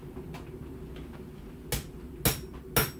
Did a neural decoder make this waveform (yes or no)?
no